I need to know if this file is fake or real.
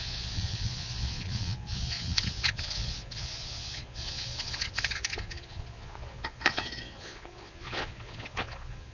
fake